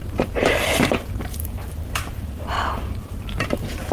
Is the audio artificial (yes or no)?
yes